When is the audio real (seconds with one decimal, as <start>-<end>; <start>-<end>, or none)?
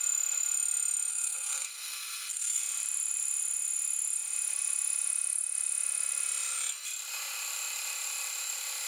0.0-1.1; 2.6-8.9